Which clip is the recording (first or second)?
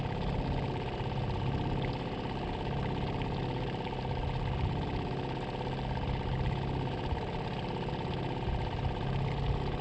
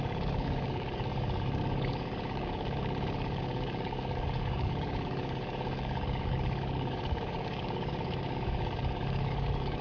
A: first